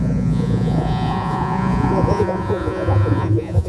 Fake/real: fake